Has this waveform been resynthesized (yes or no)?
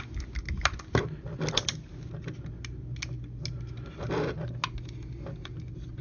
no